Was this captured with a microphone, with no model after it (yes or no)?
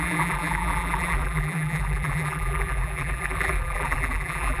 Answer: no